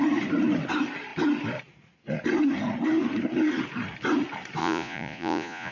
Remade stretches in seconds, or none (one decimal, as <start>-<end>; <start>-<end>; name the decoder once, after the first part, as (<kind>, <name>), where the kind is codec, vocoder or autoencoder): 4.6-5.7 (vocoder, Vocos)

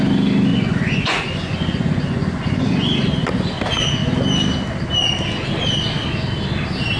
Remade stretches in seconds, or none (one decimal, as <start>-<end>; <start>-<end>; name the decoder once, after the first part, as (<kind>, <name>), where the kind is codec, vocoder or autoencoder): 0.5-3.0 (vocoder, Vocos)

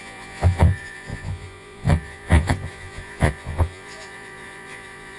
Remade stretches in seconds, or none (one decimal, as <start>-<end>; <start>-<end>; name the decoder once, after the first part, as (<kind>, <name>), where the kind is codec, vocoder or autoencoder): 0.0-5.2 (vocoder, Vocos)

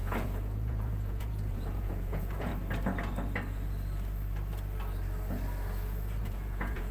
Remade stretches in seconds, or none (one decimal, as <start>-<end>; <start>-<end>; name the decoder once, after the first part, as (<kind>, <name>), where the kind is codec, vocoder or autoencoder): 0.0-2.5 (vocoder, Vocos); 6.2-6.9

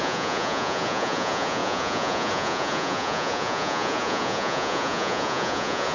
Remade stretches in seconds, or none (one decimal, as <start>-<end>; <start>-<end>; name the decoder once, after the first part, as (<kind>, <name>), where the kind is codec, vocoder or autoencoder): 0.0-5.9 (vocoder, Vocos)

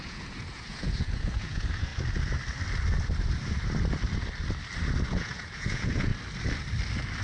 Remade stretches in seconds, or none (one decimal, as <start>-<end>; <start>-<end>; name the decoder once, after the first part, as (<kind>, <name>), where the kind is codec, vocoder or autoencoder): 0.0-1.9 (vocoder, Vocos); 5.0-6.1

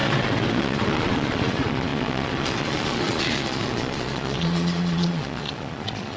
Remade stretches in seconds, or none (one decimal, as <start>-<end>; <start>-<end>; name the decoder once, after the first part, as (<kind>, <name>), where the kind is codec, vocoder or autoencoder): 0.0-6.2 (vocoder, Vocos)